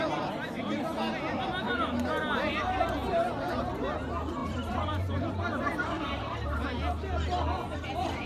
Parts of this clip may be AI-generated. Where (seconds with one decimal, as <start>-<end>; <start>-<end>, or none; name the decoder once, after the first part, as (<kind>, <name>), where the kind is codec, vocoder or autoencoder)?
4.4-6.2 (vocoder, BigVGAN v2)